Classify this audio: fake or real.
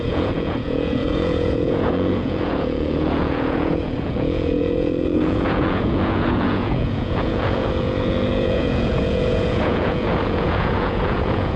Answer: fake